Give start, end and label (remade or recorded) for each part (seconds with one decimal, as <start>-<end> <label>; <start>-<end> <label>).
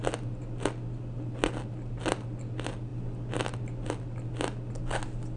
0.0-5.4 recorded